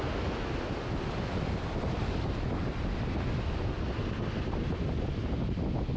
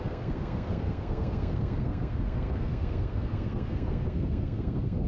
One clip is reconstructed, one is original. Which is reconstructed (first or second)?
second